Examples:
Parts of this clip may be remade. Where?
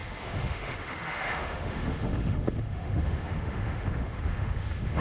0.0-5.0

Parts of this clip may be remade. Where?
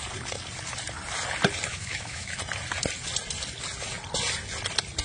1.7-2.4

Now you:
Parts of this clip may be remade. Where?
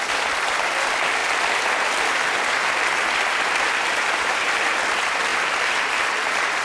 0.0-1.2; 4.0-6.6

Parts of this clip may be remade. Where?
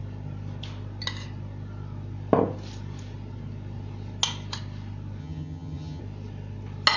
5.2-6.0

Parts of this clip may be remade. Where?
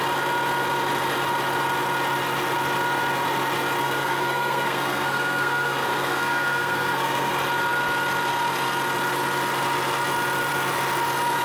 3.8-7.3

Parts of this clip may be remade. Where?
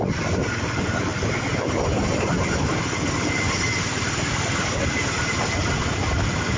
2.1-2.7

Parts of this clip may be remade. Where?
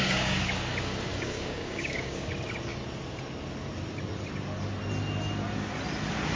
0.0-0.6; 1.1-2.3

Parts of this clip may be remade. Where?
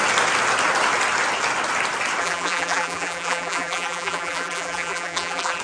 2.2-5.6